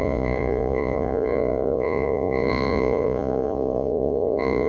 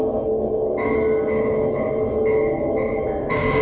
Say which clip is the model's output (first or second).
first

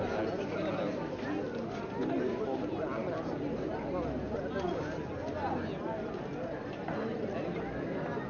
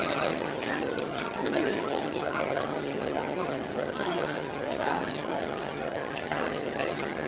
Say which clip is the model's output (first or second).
second